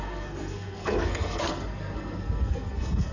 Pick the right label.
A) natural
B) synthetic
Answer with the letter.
B